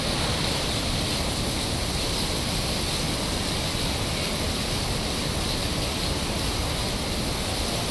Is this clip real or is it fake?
real